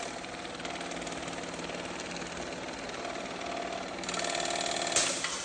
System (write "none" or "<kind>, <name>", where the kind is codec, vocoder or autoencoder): none